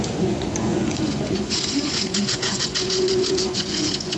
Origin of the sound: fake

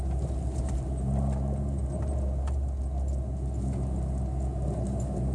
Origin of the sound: real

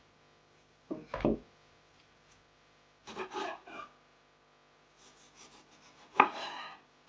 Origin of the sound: real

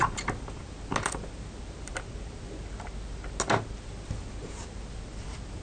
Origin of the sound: real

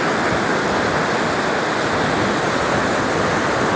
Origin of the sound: real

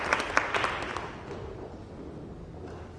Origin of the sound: real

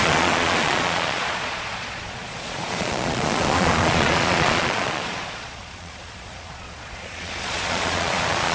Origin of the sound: fake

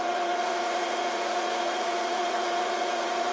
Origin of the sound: fake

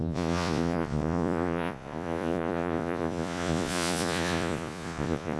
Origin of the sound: fake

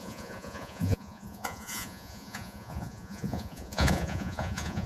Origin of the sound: fake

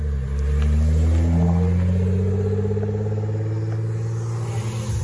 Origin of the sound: real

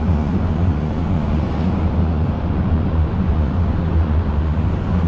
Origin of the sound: fake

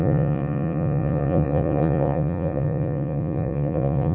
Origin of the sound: fake